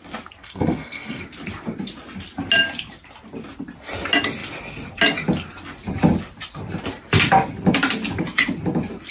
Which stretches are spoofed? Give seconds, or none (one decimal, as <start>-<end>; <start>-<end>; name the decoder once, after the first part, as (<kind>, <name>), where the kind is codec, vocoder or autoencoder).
0.4-1.2 (codec, SNAC)